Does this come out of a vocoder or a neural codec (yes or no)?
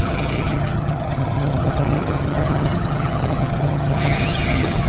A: yes